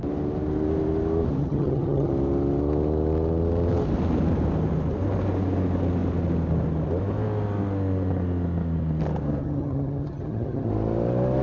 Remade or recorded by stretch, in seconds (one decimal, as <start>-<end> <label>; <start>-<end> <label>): 0.0-1.4 recorded; 1.4-2.1 remade; 2.1-9.4 recorded; 9.4-10.7 remade; 10.7-11.4 recorded